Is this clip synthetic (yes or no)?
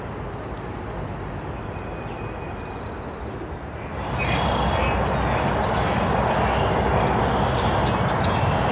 no